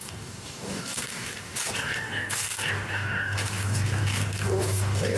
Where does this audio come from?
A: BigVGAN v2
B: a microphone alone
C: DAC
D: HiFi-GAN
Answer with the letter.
C